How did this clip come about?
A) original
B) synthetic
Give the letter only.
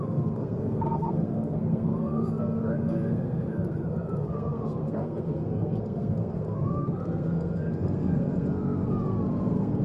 B